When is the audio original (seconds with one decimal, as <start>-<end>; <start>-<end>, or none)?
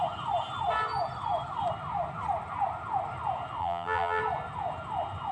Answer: 0.0-3.6; 4.2-5.3